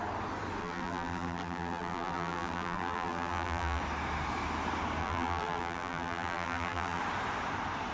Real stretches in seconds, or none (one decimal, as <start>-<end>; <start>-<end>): 0.0-0.6; 3.8-5.0; 7.0-7.9